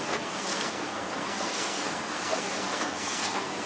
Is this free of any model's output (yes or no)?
no